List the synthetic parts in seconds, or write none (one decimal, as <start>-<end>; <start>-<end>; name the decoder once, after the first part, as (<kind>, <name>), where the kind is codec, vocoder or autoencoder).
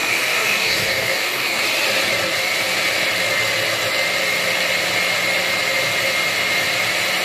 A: 0.0-1.6 (codec, DAC)